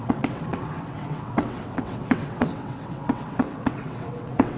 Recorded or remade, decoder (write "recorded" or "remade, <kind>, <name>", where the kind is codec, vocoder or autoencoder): remade, vocoder, WaveNeXt